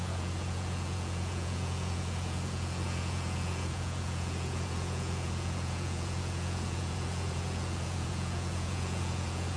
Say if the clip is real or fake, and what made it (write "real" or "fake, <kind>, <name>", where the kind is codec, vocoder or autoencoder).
fake, vocoder, Vocos